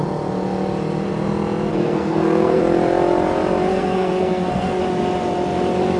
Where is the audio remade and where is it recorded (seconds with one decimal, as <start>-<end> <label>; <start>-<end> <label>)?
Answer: 0.0-1.7 recorded; 1.7-2.6 remade; 2.6-3.7 recorded; 3.7-4.8 remade; 4.8-6.0 recorded